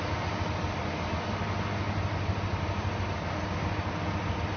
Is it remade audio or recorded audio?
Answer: recorded